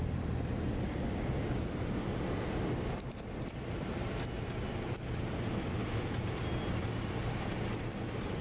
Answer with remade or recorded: recorded